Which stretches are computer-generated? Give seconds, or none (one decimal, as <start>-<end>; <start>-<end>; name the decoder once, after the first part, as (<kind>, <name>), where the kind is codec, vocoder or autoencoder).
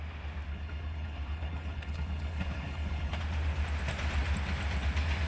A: 0.5-3.2 (codec, HILCodec)